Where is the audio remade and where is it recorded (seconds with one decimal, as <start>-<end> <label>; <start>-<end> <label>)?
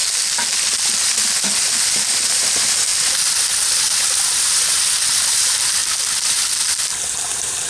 0.0-2.3 recorded; 2.3-5.8 remade; 5.8-7.3 recorded; 7.3-7.7 remade